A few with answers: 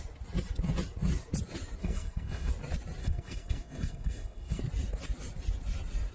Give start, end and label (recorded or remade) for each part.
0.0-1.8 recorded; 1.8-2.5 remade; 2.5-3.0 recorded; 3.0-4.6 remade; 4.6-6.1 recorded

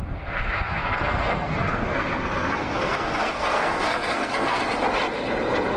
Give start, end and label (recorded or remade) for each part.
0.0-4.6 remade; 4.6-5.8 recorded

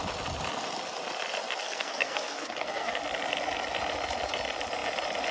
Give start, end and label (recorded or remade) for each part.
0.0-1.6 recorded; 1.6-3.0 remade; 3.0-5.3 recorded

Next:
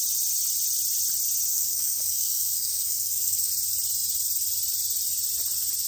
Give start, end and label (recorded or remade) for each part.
0.0-1.5 recorded; 1.5-3.5 remade; 3.5-5.9 recorded

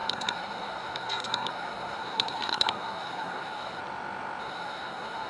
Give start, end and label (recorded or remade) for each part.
0.0-3.8 remade; 3.8-4.4 recorded; 4.4-5.3 remade

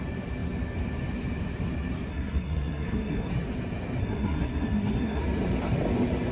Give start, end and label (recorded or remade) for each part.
0.0-2.1 recorded; 2.1-3.3 remade; 3.3-4.0 recorded; 4.0-5.2 remade; 5.2-6.3 recorded